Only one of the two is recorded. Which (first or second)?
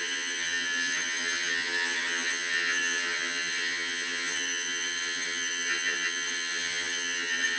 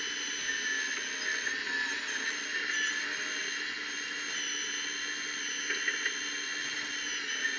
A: second